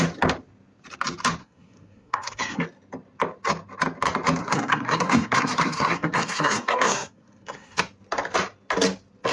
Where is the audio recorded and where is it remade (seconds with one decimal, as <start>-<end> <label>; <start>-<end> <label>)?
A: 0.0-1.4 recorded; 1.4-2.6 remade; 2.6-4.4 recorded; 4.4-7.8 remade; 7.8-9.3 recorded